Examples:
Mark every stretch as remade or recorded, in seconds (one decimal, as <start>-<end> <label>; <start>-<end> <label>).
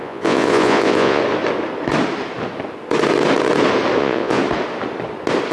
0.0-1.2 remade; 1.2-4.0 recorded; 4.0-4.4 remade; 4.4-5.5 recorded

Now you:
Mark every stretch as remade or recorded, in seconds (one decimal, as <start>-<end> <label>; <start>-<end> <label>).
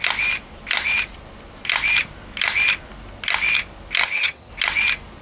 0.0-4.0 recorded; 4.0-4.5 remade; 4.5-5.2 recorded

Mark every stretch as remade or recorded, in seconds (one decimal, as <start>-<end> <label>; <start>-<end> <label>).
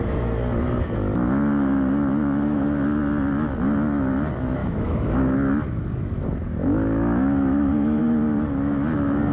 0.0-4.6 recorded; 4.6-5.2 remade; 5.2-6.6 recorded; 6.6-8.0 remade; 8.0-9.3 recorded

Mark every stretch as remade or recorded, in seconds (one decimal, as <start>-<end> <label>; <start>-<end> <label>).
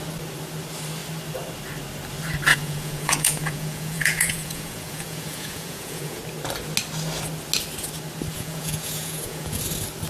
0.0-2.5 recorded; 2.5-6.2 remade; 6.2-8.3 recorded; 8.3-9.6 remade; 9.6-10.1 recorded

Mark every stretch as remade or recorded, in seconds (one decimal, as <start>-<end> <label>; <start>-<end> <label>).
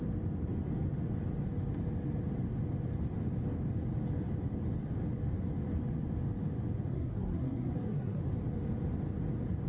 0.0-6.9 recorded; 6.9-8.2 remade; 8.2-9.7 recorded